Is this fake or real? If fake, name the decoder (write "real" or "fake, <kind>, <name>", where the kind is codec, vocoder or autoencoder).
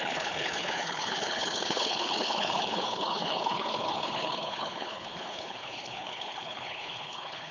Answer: fake, codec, HILCodec